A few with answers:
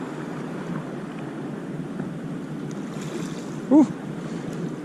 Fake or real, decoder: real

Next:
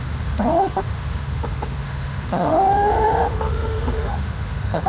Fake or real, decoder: fake, autoencoder, DAC-VAE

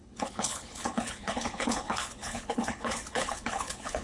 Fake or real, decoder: fake, codec, HILCodec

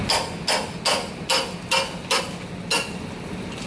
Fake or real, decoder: real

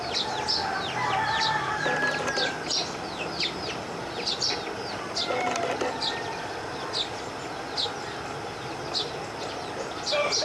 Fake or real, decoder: real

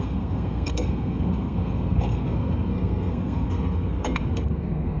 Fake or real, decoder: fake, codec, SNAC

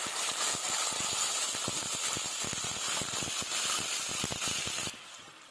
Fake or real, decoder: real